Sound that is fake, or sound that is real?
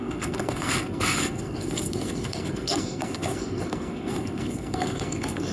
fake